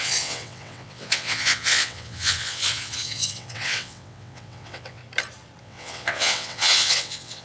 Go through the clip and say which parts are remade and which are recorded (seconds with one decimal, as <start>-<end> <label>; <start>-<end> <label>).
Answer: 0.0-5.0 remade; 5.0-5.6 recorded; 5.6-7.4 remade